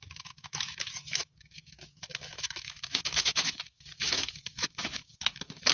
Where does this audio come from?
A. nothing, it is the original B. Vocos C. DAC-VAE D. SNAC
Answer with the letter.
C